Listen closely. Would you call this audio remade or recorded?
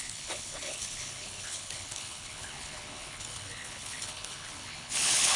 remade